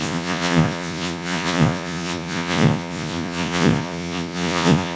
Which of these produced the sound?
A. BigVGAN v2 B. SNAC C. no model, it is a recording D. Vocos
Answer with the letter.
D